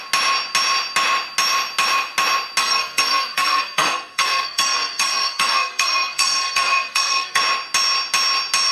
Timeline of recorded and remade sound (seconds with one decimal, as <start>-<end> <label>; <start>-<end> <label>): 0.0-2.6 recorded; 2.6-7.4 remade; 7.4-8.7 recorded